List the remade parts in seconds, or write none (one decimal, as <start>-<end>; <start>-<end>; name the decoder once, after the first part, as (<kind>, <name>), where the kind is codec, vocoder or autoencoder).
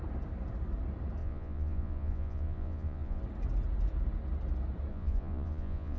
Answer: 1.2-3.2 (vocoder, Vocos); 4.9-6.0